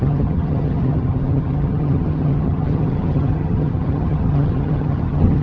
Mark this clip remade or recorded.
remade